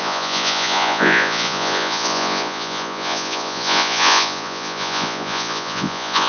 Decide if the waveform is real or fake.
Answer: fake